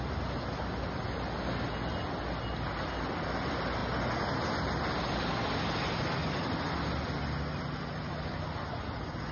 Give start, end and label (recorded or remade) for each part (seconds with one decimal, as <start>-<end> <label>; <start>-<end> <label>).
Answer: 0.0-9.3 recorded